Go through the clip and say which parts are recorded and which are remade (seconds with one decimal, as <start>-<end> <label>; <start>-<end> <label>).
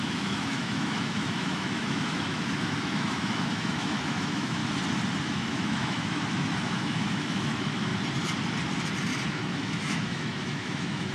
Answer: 0.0-4.6 remade; 4.6-5.2 recorded; 5.2-7.9 remade; 7.9-9.3 recorded; 9.3-11.1 remade